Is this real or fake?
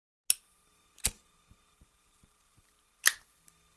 real